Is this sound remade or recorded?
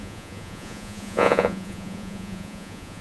remade